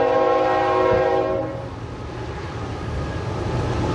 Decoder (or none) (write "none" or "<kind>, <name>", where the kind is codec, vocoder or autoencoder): none